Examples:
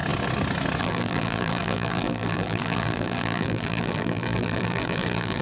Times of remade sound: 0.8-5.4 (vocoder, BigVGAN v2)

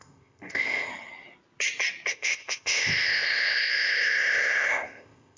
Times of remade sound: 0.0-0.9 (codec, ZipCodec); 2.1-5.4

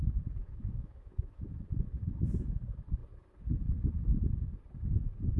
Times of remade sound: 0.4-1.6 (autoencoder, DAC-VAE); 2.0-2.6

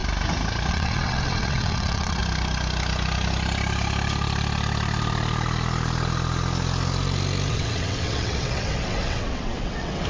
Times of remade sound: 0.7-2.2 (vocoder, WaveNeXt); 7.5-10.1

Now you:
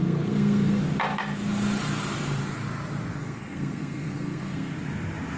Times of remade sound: 0.0-0.8 (codec, SNAC); 3.2-4.7